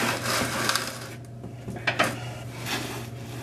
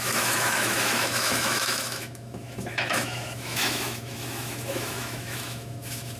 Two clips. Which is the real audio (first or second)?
first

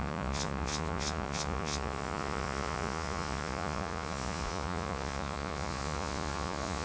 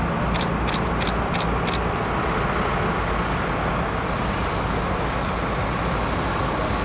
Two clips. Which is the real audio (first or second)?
second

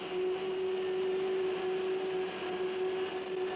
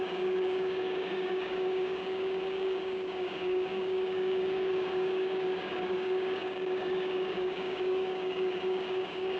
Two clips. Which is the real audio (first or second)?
first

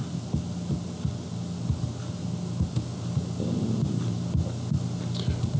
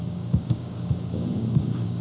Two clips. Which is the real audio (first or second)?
first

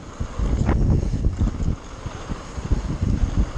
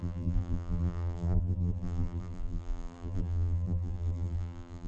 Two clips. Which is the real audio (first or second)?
first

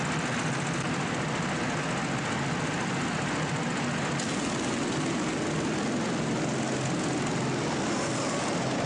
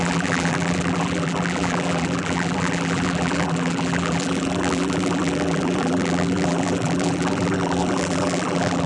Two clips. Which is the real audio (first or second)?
first